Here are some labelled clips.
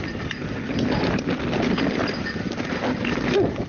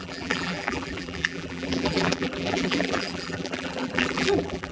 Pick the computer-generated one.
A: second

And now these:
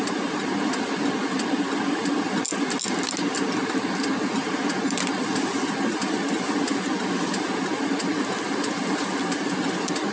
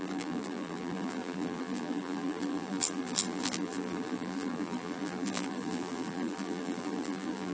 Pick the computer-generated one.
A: second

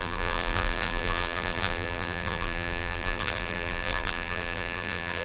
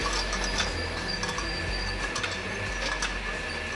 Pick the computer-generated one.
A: first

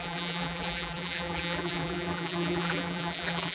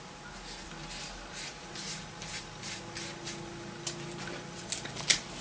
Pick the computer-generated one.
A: first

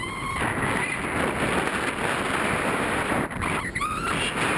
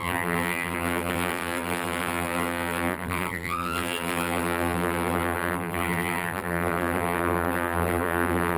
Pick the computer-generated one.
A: second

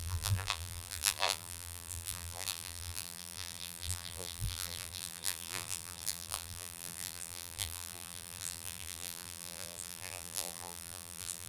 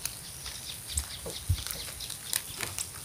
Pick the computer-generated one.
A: first